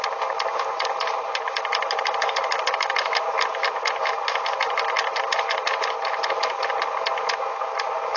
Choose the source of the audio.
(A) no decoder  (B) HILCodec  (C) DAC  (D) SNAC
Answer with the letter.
A